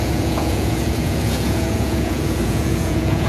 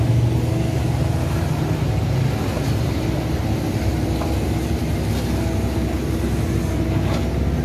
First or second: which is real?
second